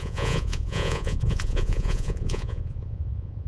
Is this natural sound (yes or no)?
no